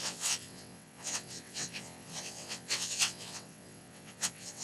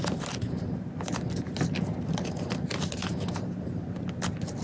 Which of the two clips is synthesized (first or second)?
first